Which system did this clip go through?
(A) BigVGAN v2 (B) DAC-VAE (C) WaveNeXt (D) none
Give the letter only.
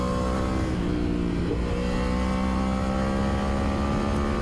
D